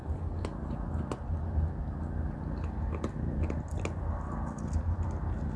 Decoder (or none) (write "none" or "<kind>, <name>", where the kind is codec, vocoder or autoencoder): none